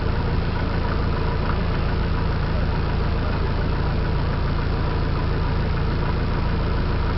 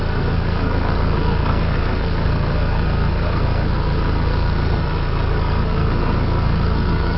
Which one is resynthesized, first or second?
second